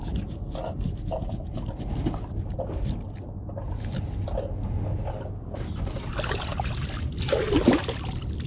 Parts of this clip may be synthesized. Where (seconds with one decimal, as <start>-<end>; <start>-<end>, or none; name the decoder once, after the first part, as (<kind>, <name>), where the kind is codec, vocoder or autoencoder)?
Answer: none